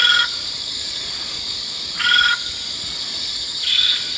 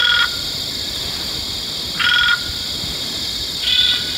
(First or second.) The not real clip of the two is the first